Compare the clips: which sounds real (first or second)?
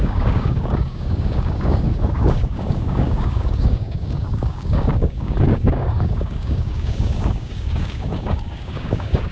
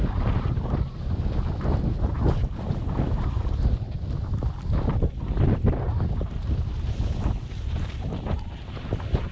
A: second